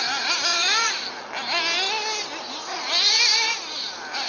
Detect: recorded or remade recorded